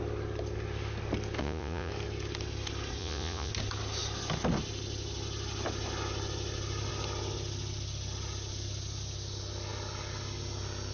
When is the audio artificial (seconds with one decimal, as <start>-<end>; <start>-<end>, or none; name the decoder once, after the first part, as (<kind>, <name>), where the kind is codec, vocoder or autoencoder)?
1.4-1.9 (vocoder, Vocos); 3.0-3.5